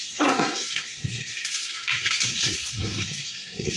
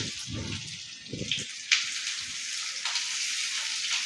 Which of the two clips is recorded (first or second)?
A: second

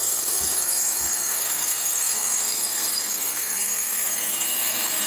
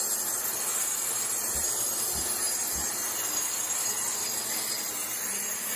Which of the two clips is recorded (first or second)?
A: second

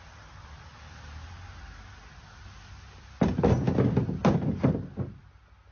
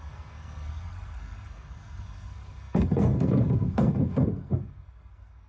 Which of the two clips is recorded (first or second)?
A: first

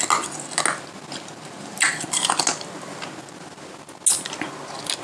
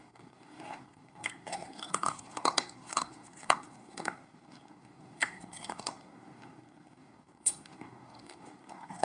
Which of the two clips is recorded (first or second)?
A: first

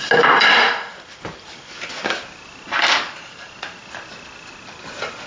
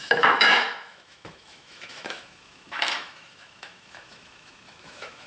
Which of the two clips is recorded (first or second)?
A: first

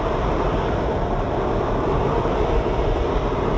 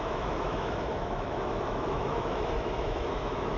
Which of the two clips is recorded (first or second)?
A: first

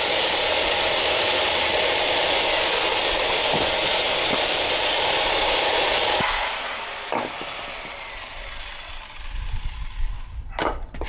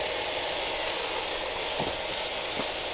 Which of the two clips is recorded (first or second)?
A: second